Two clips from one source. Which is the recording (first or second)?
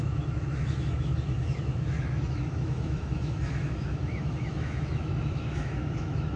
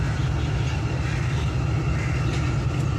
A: second